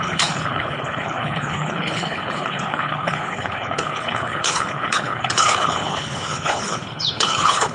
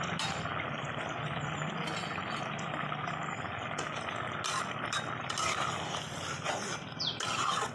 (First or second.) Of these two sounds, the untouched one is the second